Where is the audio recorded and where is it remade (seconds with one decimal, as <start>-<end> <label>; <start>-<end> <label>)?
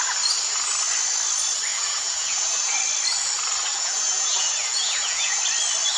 0.0-1.7 recorded; 1.7-2.7 remade; 2.7-3.7 recorded; 3.7-5.4 remade; 5.4-6.0 recorded